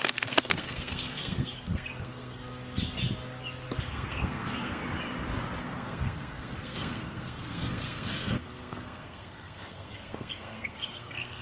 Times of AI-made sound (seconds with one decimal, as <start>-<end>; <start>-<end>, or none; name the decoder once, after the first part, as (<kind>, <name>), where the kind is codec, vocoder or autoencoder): 0.0-2.4 (codec, SNAC); 3.8-4.8; 5.6-11.4